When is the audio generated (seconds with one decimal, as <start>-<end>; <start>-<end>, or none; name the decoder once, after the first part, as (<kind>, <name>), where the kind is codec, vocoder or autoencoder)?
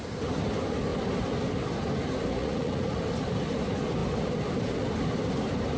2.3-3.0 (vocoder, Vocos)